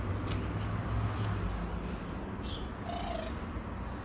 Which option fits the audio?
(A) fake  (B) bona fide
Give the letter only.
B